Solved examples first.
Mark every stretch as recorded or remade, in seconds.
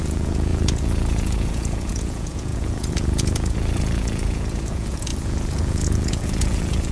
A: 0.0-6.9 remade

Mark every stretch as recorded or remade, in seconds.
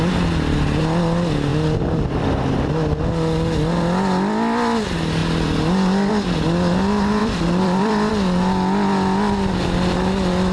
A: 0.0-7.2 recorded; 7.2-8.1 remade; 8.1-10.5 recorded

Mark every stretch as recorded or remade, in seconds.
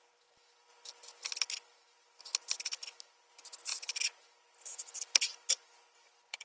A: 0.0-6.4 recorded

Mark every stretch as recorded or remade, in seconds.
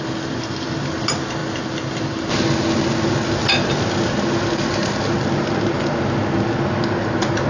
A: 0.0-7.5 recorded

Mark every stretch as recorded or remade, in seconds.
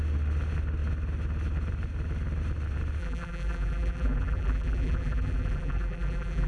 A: 0.0-3.0 recorded; 3.0-6.5 remade